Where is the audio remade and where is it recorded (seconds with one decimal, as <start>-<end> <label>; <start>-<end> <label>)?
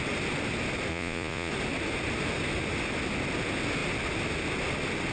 0.0-0.9 recorded; 0.9-1.5 remade; 1.5-5.1 recorded